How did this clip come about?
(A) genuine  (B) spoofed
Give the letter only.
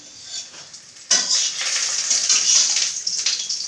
A